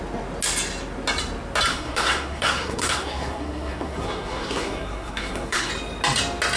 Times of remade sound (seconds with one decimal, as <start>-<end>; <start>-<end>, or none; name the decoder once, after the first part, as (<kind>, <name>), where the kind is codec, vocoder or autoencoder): 1.7-5.7 (codec, SNAC)